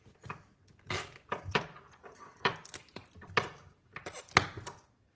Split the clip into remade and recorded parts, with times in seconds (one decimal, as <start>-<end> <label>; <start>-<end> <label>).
0.0-5.2 recorded